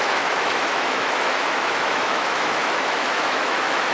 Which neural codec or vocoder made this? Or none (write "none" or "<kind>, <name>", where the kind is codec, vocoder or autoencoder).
autoencoder, DAC-VAE